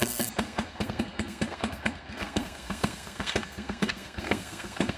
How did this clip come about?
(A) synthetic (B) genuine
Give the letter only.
A